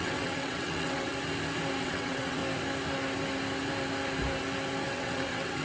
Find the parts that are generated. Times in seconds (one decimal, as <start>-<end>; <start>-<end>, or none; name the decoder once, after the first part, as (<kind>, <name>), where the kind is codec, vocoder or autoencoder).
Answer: 0.0-1.1 (vocoder, WaveNeXt); 1.8-2.4; 4.9-5.6